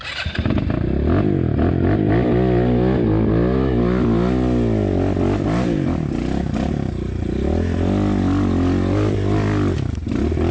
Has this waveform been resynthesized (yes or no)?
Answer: no